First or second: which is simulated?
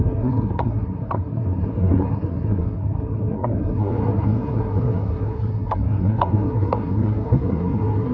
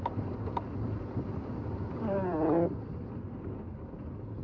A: first